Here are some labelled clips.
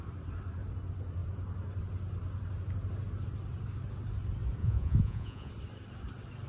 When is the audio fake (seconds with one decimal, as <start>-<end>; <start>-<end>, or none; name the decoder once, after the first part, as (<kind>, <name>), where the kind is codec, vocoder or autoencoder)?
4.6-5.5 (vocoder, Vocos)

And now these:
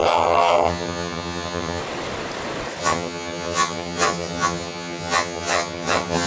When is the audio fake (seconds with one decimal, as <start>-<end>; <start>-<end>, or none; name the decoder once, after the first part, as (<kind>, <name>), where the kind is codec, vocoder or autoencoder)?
0.0-1.8 (vocoder, HiFi-GAN); 2.8-6.3

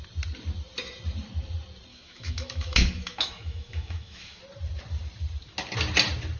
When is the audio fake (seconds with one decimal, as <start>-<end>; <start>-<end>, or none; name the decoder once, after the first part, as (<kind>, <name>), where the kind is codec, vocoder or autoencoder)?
1.9-4.4 (autoencoder, DAC-VAE)

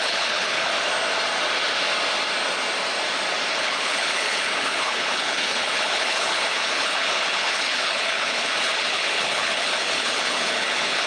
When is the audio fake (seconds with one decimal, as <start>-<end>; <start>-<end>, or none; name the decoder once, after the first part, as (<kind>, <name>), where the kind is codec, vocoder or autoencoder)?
0.0-0.7 (codec, HILCodec); 3.5-11.1